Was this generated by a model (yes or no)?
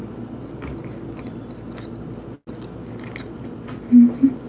no